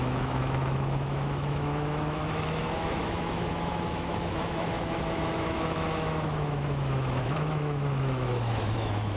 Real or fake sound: fake